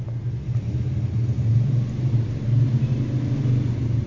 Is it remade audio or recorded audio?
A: recorded